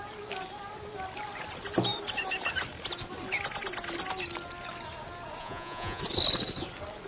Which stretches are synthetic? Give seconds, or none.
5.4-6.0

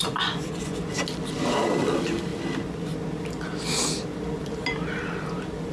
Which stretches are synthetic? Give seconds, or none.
0.0-0.8

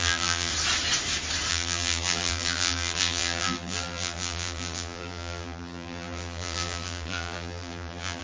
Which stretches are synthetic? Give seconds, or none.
0.0-0.5; 1.5-8.2

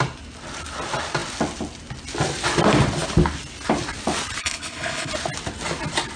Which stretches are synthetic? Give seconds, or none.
4.4-5.1